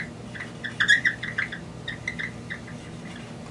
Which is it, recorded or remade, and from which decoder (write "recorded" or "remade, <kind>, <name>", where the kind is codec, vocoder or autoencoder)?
recorded